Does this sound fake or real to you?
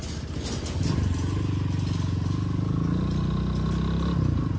real